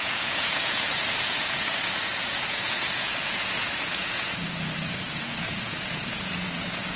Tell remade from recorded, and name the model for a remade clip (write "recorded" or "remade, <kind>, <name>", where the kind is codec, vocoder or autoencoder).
remade, vocoder, Vocos